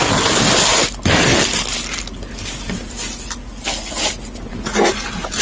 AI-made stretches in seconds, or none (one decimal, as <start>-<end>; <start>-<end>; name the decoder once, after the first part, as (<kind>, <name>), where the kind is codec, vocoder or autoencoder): none